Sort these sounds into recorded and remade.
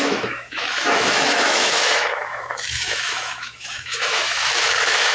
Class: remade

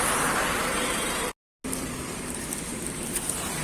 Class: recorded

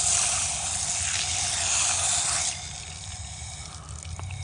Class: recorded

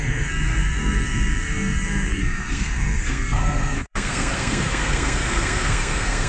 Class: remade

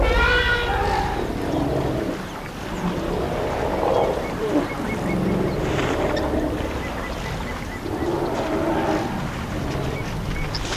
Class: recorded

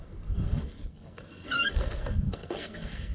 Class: remade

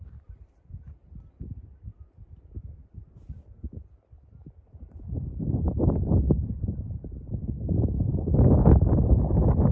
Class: remade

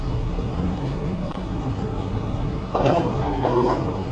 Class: remade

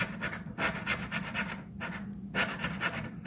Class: recorded